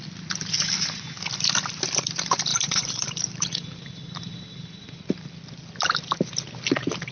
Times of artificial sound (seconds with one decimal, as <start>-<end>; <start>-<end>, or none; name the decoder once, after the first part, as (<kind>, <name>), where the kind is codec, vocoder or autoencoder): 2.5-5.0 (vocoder, BigVGAN v2)